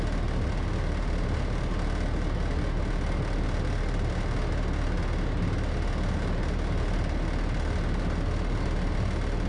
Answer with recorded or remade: recorded